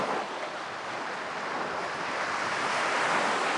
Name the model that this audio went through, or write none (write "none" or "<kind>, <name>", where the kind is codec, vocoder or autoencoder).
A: none